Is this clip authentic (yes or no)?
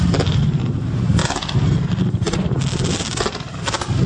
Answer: yes